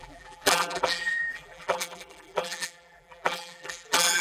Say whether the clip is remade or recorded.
remade